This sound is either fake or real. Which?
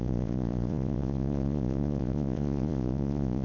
fake